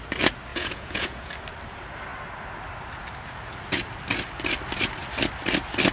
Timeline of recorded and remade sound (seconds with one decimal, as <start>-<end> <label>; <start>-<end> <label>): 0.0-0.5 recorded; 0.5-1.3 remade; 1.3-5.9 recorded

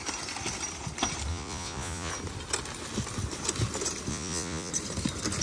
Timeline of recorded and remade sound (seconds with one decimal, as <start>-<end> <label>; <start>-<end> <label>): 0.0-1.3 recorded; 1.3-2.1 remade; 2.1-4.1 recorded; 4.1-4.7 remade; 4.7-5.4 recorded

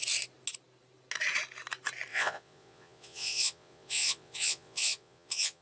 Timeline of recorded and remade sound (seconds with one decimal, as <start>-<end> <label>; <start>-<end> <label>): 0.0-2.1 recorded; 2.1-5.6 remade

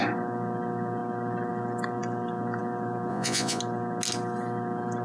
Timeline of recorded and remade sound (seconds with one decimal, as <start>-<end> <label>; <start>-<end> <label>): 0.0-3.1 recorded; 3.1-3.6 remade; 3.6-5.0 recorded

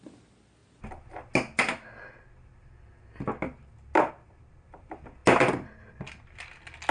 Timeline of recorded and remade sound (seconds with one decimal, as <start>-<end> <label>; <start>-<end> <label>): 0.0-6.9 recorded

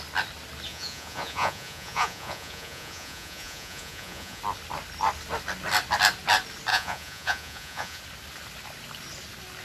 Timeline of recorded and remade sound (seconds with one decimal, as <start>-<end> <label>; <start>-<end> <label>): 0.0-0.7 recorded; 0.7-4.4 remade; 4.4-6.7 recorded; 6.7-8.0 remade; 8.0-9.6 recorded

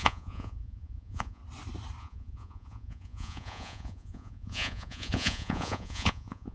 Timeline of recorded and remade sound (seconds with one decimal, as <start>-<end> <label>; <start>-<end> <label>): 0.0-1.4 remade; 1.4-2.0 recorded; 2.0-6.5 remade

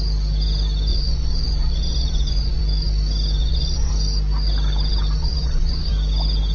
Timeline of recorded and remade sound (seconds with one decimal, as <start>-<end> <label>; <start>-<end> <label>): 0.0-0.9 recorded; 0.9-2.6 remade; 2.6-3.4 recorded; 3.4-3.9 remade; 3.9-5.2 recorded; 5.2-5.9 remade; 5.9-6.5 recorded